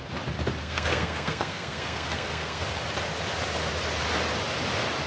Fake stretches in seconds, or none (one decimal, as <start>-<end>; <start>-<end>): 0.6-2.6